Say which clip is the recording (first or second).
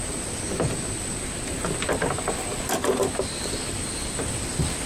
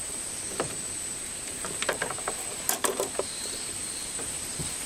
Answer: first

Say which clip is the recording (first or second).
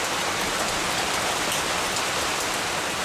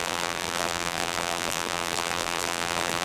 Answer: first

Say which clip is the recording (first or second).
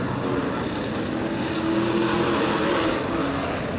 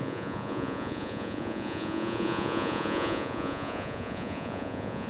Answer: first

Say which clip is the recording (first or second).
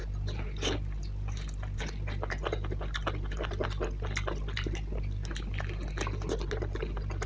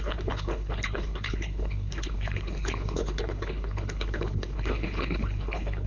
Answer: first